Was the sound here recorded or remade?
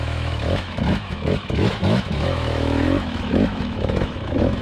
remade